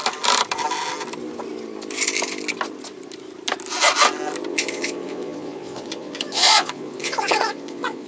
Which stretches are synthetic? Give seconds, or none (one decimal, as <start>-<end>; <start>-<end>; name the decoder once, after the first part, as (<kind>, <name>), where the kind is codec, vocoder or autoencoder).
4.5-8.1 (vocoder, Vocos)